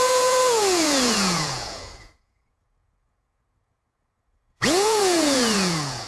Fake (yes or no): yes